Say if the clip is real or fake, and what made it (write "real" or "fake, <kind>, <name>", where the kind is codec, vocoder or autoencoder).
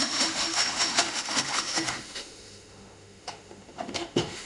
fake, autoencoder, DAC-VAE